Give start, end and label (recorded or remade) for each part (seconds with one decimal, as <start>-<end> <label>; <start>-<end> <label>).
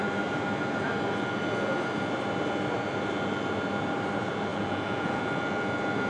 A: 0.0-4.5 recorded; 4.5-5.2 remade; 5.2-6.1 recorded